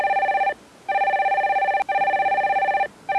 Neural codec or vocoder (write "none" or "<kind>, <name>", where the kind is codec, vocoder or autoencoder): none